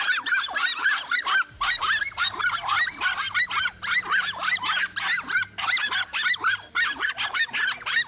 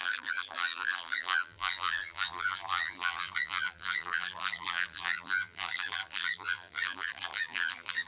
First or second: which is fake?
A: second